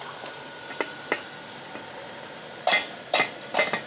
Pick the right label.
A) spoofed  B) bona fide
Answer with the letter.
B